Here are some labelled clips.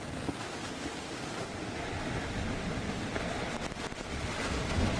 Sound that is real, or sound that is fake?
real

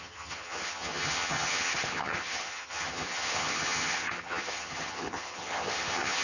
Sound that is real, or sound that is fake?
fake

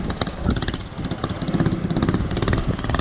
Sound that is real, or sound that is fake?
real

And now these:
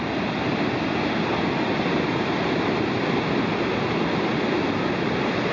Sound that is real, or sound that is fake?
real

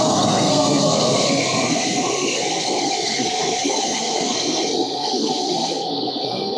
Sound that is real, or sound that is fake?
fake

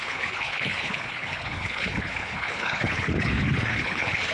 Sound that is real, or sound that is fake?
fake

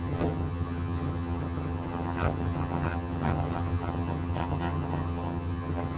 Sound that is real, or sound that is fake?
fake